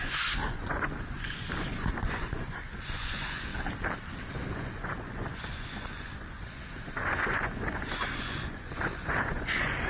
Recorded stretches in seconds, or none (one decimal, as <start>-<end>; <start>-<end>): 3.5-4.5